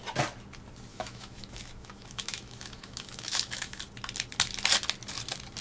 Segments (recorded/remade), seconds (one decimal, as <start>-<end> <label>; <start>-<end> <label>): 0.0-0.9 recorded; 0.9-3.8 remade; 3.8-5.6 recorded